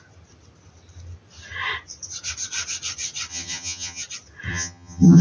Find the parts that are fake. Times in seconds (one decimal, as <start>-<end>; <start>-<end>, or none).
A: 3.3-4.0; 4.5-5.2